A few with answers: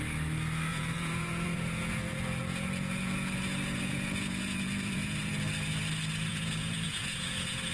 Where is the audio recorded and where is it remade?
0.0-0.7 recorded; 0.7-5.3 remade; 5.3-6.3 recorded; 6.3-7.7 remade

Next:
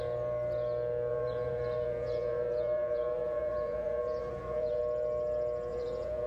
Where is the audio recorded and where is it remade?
0.0-1.1 recorded; 1.1-4.8 remade; 4.8-5.7 recorded; 5.7-6.3 remade

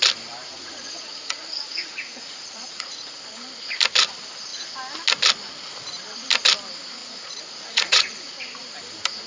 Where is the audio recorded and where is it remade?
0.0-0.5 recorded; 0.5-3.2 remade; 3.2-7.0 recorded; 7.0-8.3 remade; 8.3-9.3 recorded

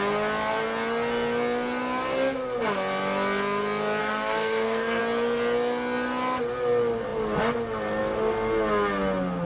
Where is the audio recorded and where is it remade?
0.0-4.0 recorded; 4.0-5.0 remade; 5.0-9.5 recorded

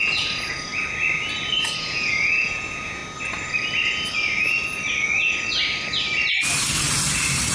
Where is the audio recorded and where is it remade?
0.0-0.7 remade; 0.7-1.8 recorded; 1.8-3.0 remade; 3.0-7.5 recorded